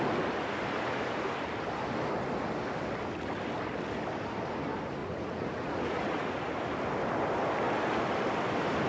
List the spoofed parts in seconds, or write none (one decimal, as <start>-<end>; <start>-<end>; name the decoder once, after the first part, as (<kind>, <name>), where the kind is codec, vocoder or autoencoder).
5.0-6.4 (vocoder, Vocos)